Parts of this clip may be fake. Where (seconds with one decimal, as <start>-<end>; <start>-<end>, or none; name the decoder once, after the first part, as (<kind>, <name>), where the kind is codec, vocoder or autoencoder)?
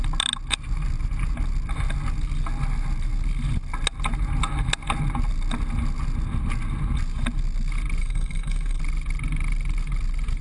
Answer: 8.0-8.8 (codec, SNAC)